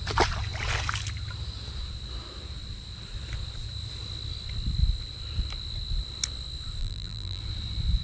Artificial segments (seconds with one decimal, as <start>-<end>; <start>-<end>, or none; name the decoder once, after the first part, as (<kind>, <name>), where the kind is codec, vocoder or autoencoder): 6.8-7.4 (vocoder, BigVGAN v2)

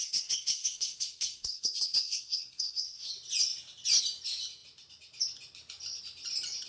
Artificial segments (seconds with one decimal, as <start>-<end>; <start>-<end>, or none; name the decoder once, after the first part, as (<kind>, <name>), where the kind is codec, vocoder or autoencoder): 0.0-3.1 (codec, SNAC)

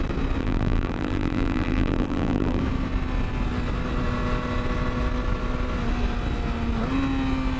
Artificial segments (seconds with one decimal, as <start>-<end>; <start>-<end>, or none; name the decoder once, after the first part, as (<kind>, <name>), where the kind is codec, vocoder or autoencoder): 0.4-2.6 (vocoder, BigVGAN v2)

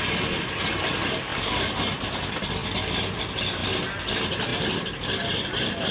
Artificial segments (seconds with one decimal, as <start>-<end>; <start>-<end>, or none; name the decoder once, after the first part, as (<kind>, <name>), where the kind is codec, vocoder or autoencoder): 1.3-1.8 (vocoder, BigVGAN v2)

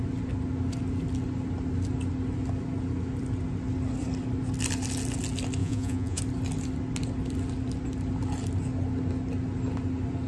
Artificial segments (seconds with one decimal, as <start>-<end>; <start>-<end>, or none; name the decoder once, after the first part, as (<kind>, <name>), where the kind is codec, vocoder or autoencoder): 5.6-6.2 (vocoder, Vocos)

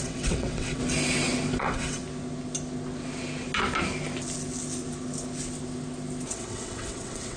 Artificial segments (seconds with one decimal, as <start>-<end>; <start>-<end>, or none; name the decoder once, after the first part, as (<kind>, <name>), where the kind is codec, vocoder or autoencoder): 0.0-0.8 (vocoder, WaveNeXt); 1.6-2.0; 6.3-7.4

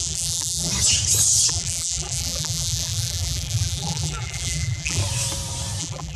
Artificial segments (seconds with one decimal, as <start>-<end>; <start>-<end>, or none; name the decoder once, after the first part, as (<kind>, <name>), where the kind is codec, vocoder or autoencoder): 0.0-0.7 (vocoder, BigVGAN v2); 1.5-5.0; 5.8-6.2

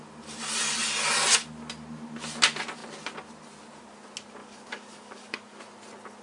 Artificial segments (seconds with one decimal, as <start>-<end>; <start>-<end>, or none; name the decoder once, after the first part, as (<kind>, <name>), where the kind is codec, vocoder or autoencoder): 4.4-5.6 (codec, DAC)